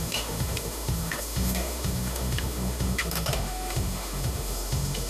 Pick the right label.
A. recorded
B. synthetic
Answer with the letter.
B